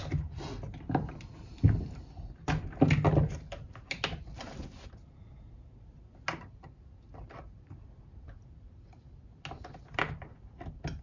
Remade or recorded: recorded